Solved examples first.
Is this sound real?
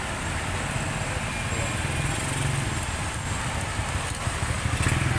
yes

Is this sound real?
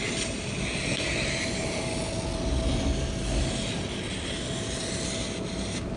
yes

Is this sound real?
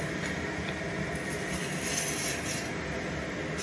yes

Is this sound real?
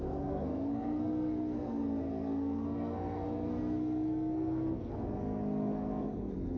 no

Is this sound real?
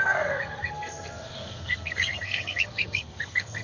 no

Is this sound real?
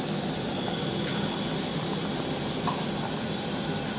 yes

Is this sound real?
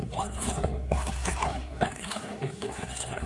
no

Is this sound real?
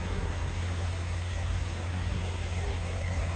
no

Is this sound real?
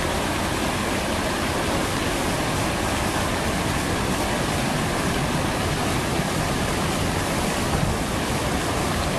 yes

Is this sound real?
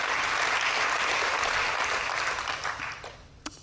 yes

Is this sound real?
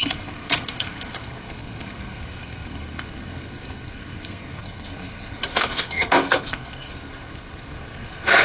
no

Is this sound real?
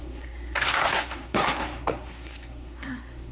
no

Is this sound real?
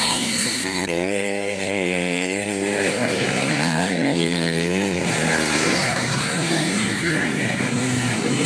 no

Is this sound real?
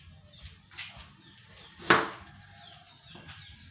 yes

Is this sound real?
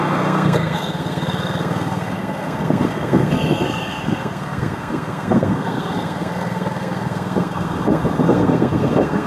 no